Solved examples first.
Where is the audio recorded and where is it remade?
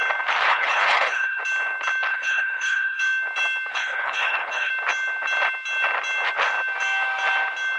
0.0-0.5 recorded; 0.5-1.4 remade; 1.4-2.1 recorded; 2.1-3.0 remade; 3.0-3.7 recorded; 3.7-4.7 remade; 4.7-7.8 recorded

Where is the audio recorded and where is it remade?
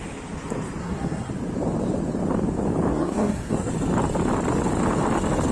0.0-0.8 recorded; 0.8-1.3 remade; 1.3-2.9 recorded; 2.9-3.7 remade; 3.7-5.5 recorded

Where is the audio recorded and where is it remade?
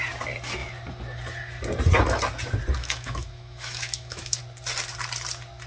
0.0-2.8 recorded; 2.8-4.4 remade; 4.4-5.7 recorded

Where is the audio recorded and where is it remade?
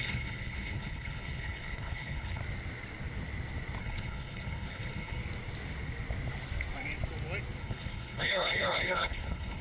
0.0-2.4 remade; 2.4-3.8 recorded; 3.8-5.2 remade; 5.2-7.6 recorded; 7.6-9.6 remade